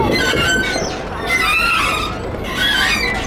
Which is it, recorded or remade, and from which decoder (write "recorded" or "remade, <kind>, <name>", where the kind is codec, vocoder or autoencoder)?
recorded